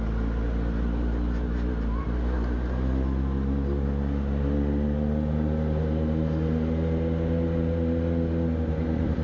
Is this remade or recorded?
recorded